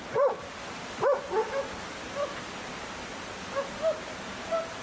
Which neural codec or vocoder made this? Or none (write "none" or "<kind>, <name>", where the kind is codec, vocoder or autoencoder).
none